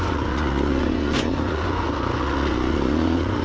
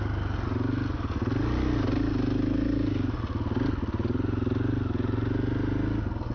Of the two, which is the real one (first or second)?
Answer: second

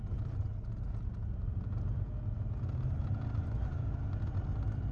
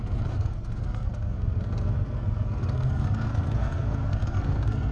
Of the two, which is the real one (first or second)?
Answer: first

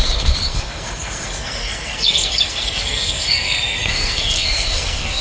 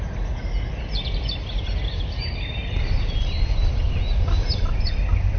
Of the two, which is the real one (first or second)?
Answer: second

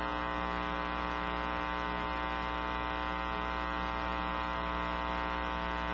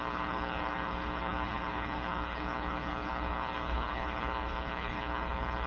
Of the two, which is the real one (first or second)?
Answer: first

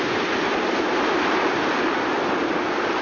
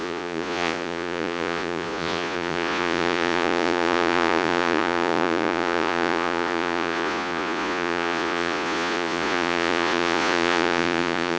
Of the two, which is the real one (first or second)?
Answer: first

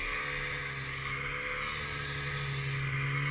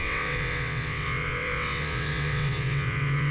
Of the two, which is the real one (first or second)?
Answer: first